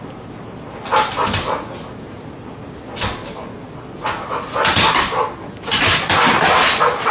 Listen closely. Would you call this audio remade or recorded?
recorded